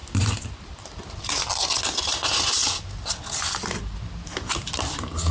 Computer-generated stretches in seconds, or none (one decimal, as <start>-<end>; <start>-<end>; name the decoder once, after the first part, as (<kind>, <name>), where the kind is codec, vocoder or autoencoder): 0.0-5.3 (vocoder, BigVGAN v2)